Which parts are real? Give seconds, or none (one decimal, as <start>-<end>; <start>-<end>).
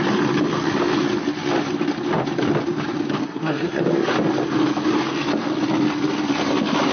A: 0.0-3.2; 3.8-6.9